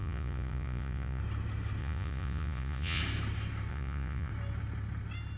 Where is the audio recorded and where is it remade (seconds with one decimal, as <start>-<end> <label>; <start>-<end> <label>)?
0.0-1.2 remade; 1.2-1.8 recorded; 1.8-3.0 remade; 3.0-3.7 recorded; 3.7-4.3 remade; 4.3-5.4 recorded